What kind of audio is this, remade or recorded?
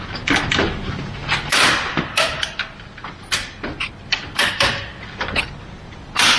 recorded